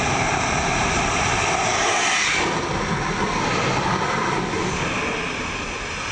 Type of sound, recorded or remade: recorded